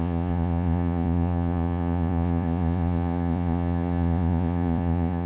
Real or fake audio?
fake